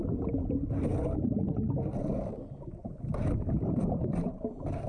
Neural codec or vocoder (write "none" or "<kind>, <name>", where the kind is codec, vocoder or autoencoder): none